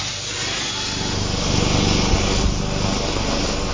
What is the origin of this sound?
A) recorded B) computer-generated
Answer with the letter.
A